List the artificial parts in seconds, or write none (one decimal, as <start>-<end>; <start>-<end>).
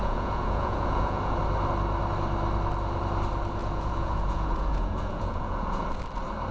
0.0-1.4; 3.6-5.9